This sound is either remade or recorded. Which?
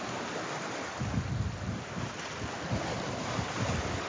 recorded